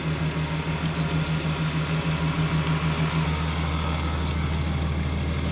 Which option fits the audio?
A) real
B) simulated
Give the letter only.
A